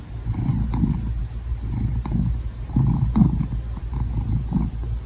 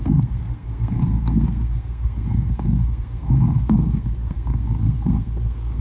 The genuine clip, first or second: first